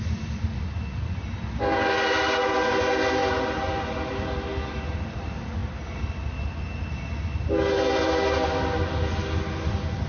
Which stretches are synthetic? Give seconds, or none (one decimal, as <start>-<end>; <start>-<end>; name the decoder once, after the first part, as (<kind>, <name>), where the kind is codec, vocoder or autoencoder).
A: none